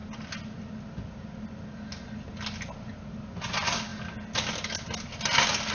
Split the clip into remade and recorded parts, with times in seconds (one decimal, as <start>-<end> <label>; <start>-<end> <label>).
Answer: 0.0-5.7 recorded